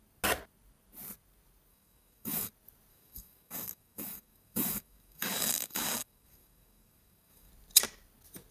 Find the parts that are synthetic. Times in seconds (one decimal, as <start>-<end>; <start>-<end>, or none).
1.7-2.5; 2.9-7.5